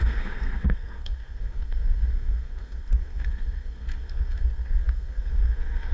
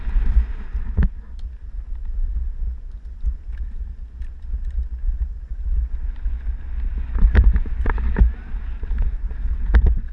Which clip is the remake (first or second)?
first